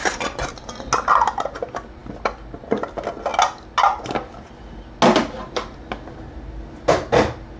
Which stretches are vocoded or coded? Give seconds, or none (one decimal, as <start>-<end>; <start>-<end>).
none